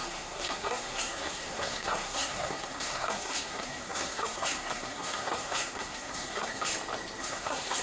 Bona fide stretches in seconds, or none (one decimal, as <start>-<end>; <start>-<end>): 6.7-7.2